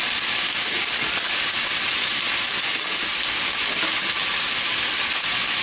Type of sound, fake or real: real